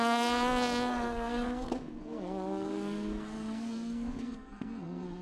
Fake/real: fake